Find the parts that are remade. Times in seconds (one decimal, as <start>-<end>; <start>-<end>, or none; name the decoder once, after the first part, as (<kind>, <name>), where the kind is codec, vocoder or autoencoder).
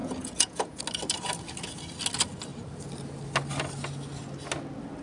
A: 0.0-0.8 (vocoder, Vocos)